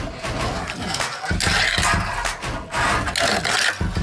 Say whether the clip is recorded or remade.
recorded